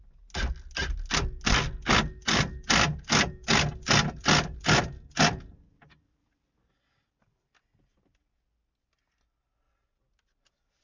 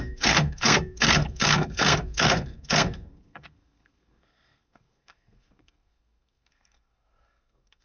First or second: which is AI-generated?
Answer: second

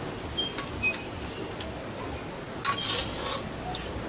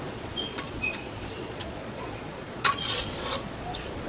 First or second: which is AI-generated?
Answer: second